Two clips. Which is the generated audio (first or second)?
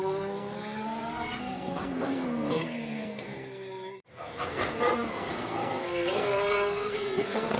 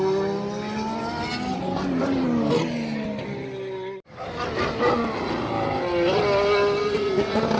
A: first